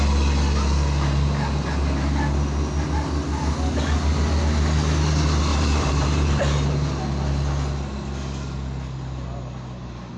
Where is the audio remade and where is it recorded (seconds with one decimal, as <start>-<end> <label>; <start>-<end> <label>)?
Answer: 0.0-5.5 recorded; 5.5-7.0 remade; 7.0-10.2 recorded